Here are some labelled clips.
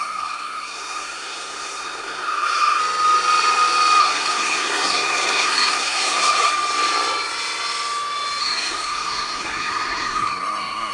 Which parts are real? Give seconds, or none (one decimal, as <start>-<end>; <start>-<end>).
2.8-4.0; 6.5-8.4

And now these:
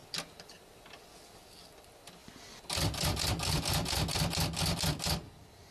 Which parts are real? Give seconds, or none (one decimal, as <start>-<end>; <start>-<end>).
0.0-5.7

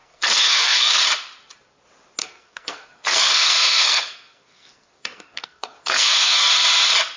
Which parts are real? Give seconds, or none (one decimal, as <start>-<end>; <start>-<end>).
1.0-2.2; 6.5-7.2

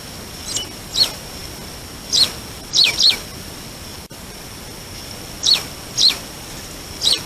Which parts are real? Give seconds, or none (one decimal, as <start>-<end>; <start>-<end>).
0.0-7.3

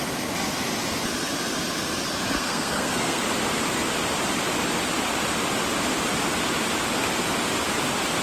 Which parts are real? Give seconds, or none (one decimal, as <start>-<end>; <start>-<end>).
0.0-2.4; 3.2-8.2

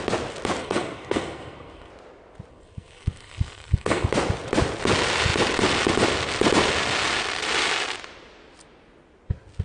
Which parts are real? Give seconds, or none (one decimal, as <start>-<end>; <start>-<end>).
0.0-0.6; 1.9-2.5; 4.1-9.6

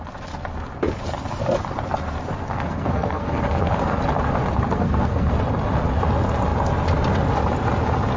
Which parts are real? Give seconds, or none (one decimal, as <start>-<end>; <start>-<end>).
0.0-2.4; 4.0-4.7; 5.3-8.2